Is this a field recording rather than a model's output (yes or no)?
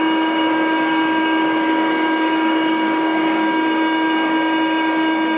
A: no